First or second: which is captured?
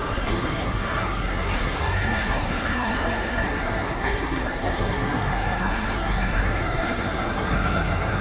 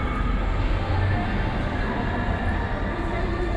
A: second